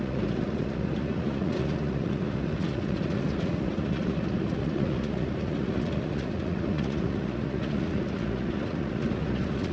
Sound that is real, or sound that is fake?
fake